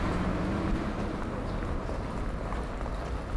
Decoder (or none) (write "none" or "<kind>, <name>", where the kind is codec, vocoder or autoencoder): none